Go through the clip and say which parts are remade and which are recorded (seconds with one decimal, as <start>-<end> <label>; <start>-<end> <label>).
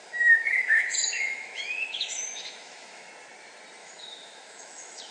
0.0-3.1 remade; 3.1-3.8 recorded; 3.8-5.1 remade